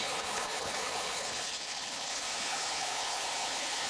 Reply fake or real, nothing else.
fake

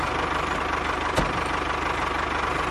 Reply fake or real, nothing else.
real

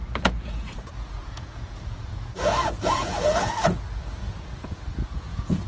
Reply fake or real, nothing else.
fake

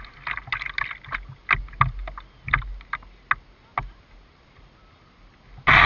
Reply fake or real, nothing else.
real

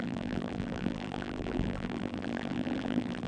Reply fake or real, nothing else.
fake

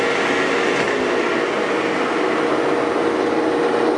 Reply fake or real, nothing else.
real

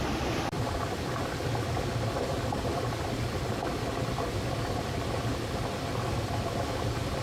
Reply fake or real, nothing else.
real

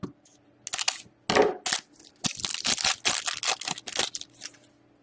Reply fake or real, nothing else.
real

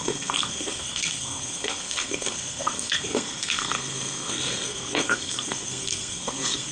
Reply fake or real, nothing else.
fake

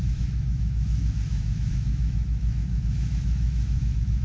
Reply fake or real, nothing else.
fake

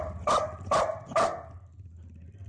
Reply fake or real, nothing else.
real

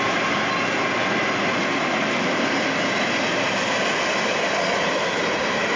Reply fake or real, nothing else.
real